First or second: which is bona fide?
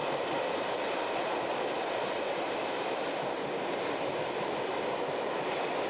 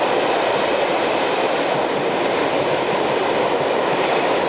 first